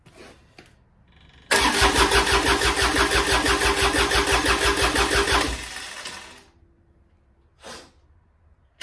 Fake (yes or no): no